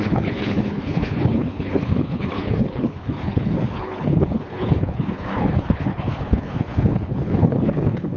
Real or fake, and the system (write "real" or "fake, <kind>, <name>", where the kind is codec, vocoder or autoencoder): fake, codec, HILCodec